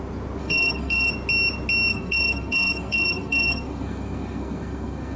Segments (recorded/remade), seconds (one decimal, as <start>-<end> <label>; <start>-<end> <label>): 0.0-0.4 recorded; 0.4-1.1 remade; 1.1-1.9 recorded; 1.9-5.2 remade